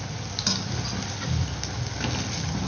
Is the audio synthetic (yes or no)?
no